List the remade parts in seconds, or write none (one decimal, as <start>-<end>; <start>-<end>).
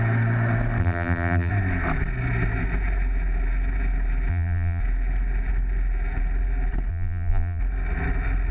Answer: 0.8-1.5; 4.3-4.8; 6.9-7.6